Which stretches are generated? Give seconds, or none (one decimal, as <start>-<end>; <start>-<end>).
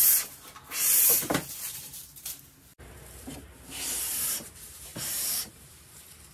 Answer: 0.0-6.3